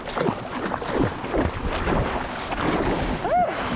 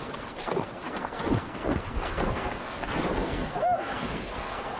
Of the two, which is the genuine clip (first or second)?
first